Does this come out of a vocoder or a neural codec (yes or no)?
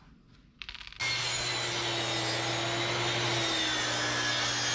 no